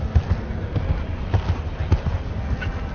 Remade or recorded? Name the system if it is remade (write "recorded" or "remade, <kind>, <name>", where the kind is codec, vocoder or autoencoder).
recorded